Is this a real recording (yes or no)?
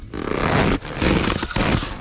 yes